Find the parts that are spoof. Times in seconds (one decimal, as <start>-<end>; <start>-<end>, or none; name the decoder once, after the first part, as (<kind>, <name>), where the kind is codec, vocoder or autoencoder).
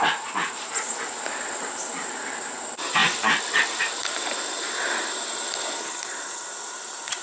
0.0-3.0 (vocoder, BigVGAN v2); 3.8-7.2